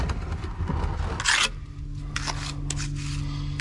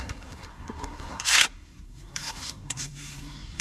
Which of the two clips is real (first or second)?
first